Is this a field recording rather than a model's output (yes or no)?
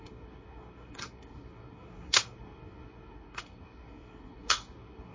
no